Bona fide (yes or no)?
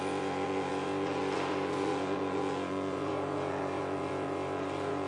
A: no